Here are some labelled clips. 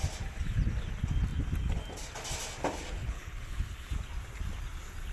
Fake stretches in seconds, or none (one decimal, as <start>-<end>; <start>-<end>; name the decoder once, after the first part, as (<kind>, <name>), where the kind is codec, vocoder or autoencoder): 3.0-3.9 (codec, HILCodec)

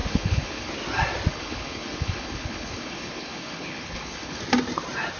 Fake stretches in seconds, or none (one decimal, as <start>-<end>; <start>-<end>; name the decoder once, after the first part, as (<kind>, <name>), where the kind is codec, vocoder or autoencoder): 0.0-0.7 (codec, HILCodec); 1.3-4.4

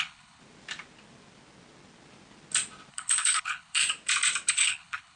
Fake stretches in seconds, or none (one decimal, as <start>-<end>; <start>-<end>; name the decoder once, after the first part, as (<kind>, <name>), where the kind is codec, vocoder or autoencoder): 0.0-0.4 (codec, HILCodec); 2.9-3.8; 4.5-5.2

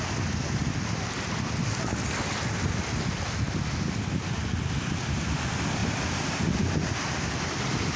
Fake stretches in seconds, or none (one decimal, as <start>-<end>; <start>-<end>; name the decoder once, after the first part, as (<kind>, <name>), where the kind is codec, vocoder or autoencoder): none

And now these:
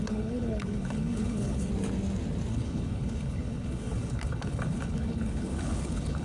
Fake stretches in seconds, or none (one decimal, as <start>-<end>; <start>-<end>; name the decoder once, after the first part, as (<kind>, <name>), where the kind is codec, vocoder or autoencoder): 0.0-1.7 (codec, HILCodec); 2.5-6.2

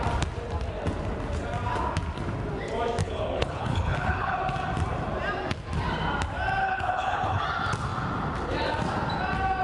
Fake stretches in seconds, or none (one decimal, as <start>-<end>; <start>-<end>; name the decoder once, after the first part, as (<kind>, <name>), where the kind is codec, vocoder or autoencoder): 3.0-4.4 (codec, HILCodec); 6.6-7.4